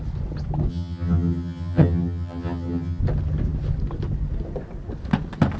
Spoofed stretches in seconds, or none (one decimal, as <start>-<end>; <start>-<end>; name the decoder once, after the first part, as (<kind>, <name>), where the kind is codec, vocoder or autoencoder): 0.7-3.0 (vocoder, HiFi-GAN)